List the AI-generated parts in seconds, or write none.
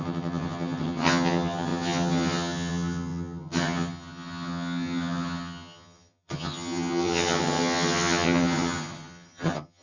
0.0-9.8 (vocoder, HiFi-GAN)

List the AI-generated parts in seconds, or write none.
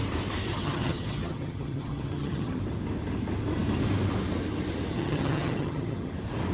0.5-2.6 (vocoder, HiFi-GAN); 4.9-6.1